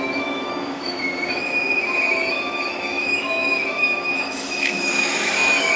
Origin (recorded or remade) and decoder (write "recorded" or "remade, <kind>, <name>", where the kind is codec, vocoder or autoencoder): remade, autoencoder, DAC-VAE